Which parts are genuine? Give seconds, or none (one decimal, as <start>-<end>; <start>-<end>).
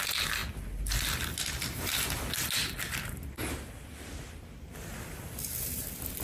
0.0-6.2